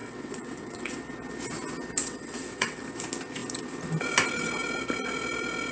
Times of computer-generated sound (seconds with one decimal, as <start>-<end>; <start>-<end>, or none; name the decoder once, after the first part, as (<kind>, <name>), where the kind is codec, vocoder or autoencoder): 0.0-1.0 (vocoder, WaveNeXt); 2.0-2.8